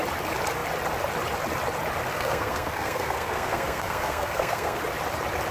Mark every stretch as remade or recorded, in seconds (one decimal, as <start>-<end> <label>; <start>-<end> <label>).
0.0-2.1 recorded; 2.1-4.8 remade; 4.8-5.5 recorded